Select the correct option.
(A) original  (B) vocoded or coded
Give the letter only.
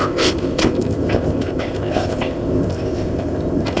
B